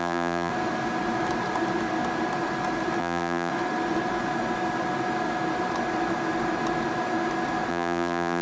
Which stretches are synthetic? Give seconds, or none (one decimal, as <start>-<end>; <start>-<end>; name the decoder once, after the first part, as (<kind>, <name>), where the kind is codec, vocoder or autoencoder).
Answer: 0.0-0.5 (vocoder, BigVGAN v2); 3.0-3.5; 7.7-8.4